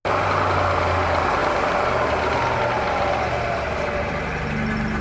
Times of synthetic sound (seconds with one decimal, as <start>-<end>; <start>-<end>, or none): none